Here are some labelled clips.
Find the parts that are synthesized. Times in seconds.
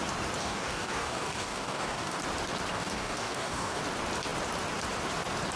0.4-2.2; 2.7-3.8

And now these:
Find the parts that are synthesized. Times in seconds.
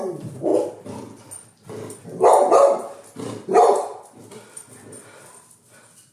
none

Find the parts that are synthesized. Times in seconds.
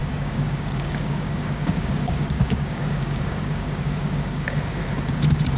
0.0-4.8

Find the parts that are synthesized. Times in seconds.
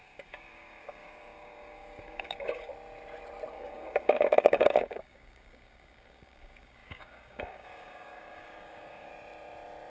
0.0-2.7; 3.5-9.1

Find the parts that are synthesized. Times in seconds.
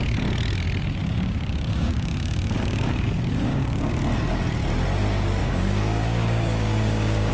1.0-3.9; 5.4-7.3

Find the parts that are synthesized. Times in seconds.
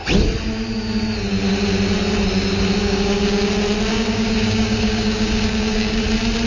2.8-3.5; 3.9-6.0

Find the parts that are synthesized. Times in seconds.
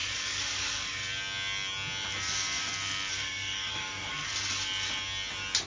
0.0-1.0; 3.1-4.3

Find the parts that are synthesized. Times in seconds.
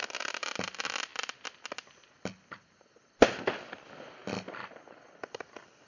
none